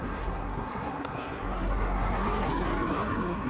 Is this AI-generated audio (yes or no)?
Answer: yes